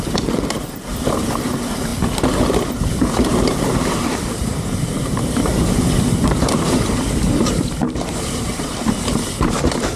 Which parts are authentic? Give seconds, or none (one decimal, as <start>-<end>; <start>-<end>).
1.9-2.9; 5.5-7.4